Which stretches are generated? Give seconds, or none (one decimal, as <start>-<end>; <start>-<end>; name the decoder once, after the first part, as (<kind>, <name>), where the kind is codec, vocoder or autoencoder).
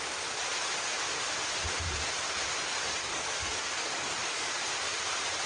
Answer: 3.0-4.6 (codec, DAC)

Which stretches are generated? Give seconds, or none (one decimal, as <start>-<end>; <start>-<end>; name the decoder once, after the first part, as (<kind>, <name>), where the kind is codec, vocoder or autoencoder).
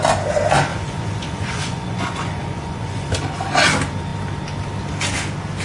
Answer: 0.7-3.1 (vocoder, Vocos)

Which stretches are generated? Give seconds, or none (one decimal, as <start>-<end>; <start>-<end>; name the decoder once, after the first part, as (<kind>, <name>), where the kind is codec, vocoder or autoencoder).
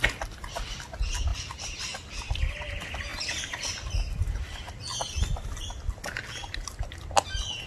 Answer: 1.3-2.6 (vocoder, BigVGAN v2); 3.1-4.8; 6.4-6.9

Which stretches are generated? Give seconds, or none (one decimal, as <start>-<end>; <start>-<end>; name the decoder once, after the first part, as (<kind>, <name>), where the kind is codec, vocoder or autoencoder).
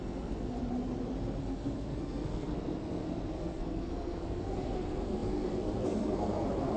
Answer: 0.0-0.6 (codec, SNAC); 1.4-6.8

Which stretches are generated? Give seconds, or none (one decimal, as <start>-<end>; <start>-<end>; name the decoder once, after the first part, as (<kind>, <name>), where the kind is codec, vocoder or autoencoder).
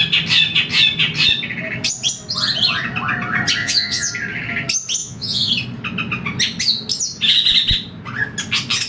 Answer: 3.6-4.1 (vocoder, Vocos); 5.0-5.5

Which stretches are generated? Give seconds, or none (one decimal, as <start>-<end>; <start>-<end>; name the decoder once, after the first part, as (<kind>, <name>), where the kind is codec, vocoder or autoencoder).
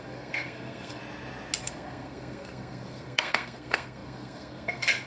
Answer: 0.0-1.0 (codec, SNAC); 1.6-5.1